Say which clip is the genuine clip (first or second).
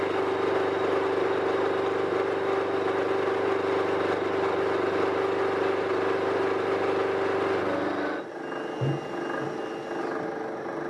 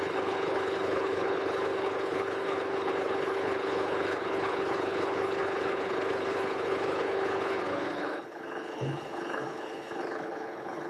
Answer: first